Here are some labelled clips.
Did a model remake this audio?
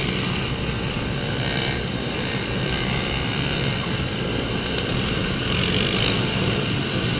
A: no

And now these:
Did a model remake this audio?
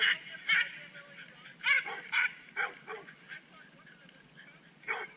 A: no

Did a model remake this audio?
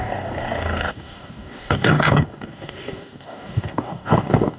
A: yes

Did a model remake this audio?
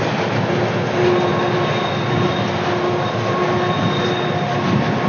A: no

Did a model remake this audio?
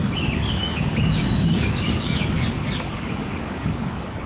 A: yes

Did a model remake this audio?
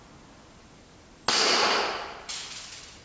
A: no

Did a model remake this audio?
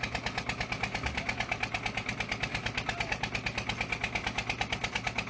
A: no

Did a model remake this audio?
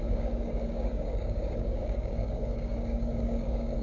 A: yes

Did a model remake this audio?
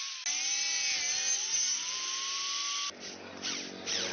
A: no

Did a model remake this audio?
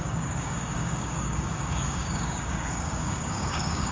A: yes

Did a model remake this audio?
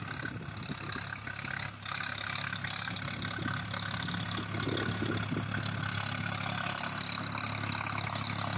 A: no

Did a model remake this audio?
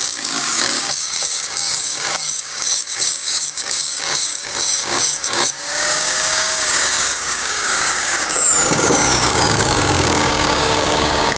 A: yes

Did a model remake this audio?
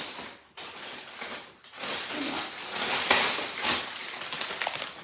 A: no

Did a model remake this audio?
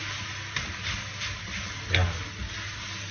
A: no